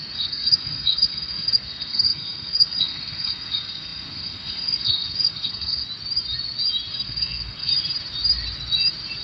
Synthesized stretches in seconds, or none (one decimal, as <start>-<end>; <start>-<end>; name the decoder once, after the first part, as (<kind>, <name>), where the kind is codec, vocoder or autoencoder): 0.0-5.8 (codec, SNAC); 6.9-7.7